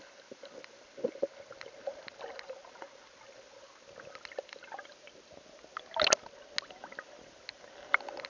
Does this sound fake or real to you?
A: real